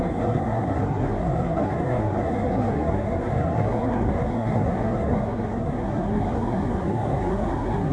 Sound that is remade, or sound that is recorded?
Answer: remade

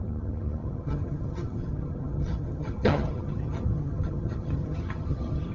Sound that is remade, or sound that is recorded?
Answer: remade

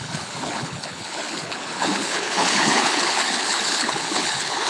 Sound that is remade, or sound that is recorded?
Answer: remade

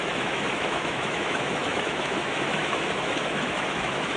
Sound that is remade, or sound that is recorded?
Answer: remade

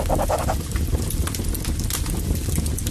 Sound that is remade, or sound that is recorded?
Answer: recorded